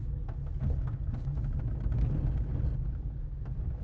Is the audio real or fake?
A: real